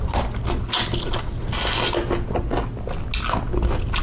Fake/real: real